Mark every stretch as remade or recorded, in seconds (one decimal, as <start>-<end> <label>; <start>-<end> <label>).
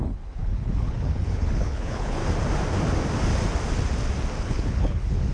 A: 0.0-2.2 remade; 2.2-4.4 recorded; 4.4-5.3 remade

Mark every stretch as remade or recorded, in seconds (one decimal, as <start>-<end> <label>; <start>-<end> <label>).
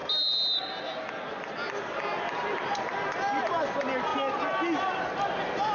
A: 0.0-5.7 recorded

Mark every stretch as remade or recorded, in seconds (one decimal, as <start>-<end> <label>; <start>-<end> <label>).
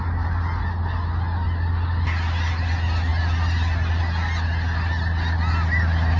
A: 0.0-6.2 recorded